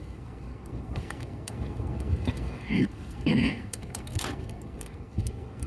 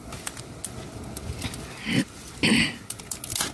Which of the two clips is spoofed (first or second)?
first